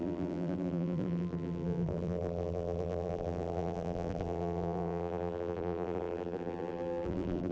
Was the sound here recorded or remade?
remade